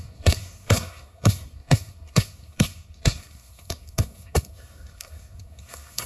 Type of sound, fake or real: fake